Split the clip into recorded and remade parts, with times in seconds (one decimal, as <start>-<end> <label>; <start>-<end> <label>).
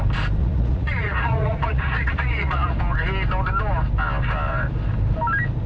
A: 0.0-0.4 recorded; 0.4-2.8 remade; 2.8-5.7 recorded